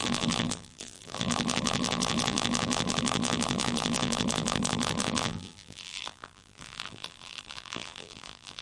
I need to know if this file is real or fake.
fake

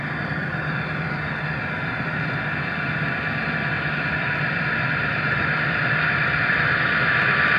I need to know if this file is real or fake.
fake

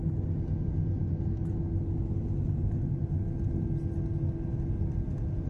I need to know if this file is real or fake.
real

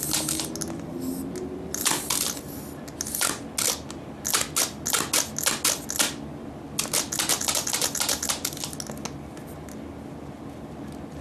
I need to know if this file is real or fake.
real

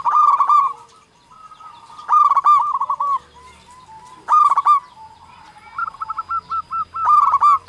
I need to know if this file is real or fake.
real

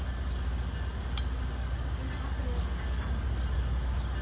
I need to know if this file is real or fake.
real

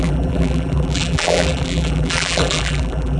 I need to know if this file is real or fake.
fake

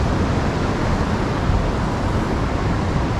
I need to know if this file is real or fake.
real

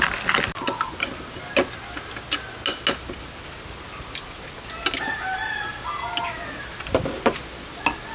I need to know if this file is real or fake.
real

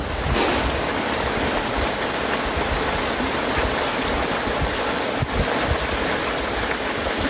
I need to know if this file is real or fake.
real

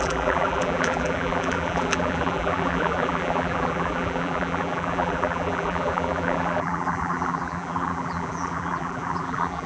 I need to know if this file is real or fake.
fake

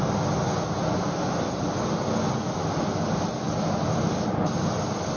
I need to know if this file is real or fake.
real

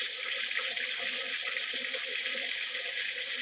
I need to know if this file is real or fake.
fake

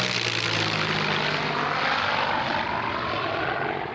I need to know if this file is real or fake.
fake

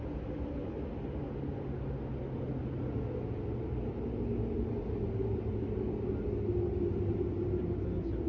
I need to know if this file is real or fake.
real